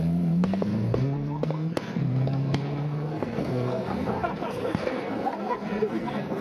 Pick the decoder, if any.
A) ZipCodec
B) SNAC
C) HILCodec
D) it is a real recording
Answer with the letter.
B